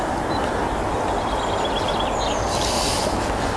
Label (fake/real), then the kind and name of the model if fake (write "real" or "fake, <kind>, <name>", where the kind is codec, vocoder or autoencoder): real